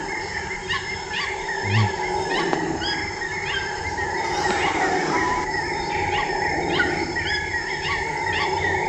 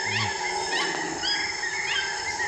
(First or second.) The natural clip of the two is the second